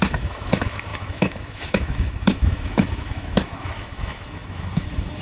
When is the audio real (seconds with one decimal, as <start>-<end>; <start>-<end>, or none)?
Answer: none